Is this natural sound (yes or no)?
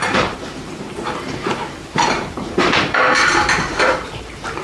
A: no